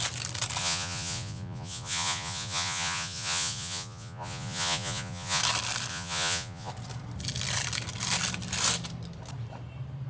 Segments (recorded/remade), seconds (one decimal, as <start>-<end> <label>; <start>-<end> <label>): 0.0-0.6 recorded; 0.6-5.4 remade; 5.4-5.9 recorded; 5.9-6.7 remade; 6.7-10.1 recorded